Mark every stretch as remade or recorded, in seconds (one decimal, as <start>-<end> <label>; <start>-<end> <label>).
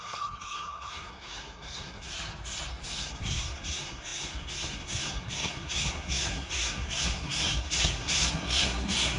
0.0-2.1 remade; 2.1-2.7 recorded; 2.7-9.2 remade